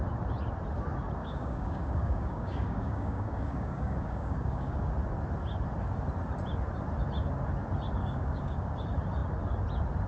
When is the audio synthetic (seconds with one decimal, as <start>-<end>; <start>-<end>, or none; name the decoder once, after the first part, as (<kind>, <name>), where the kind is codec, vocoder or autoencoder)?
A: 1.2-4.9 (codec, DAC); 8.0-8.7